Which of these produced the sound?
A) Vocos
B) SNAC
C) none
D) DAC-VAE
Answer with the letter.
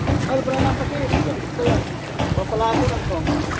C